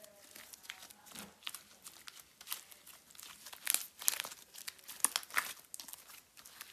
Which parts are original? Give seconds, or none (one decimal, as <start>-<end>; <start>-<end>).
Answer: 0.0-6.7